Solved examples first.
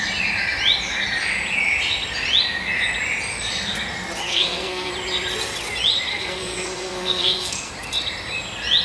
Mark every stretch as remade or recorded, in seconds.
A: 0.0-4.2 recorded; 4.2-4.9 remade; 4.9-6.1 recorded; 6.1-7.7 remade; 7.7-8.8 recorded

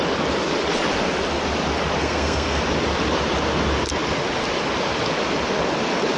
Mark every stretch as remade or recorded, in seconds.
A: 0.0-2.0 recorded; 2.0-2.6 remade; 2.6-6.2 recorded

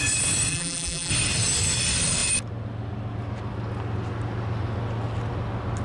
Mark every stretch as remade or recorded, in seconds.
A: 0.0-0.5 recorded; 0.5-1.1 remade; 1.1-5.8 recorded

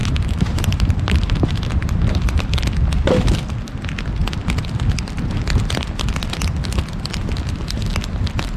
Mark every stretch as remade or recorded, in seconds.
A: 0.0-1.4 remade; 1.4-1.8 recorded; 1.8-2.5 remade; 2.5-8.6 recorded

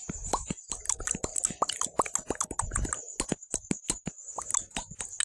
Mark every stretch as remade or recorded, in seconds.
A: 0.0-0.8 remade; 0.8-5.2 recorded